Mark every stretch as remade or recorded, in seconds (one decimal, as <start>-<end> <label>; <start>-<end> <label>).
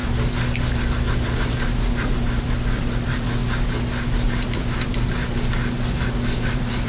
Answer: 0.0-0.7 recorded; 0.7-3.4 remade; 3.4-4.4 recorded; 4.4-6.9 remade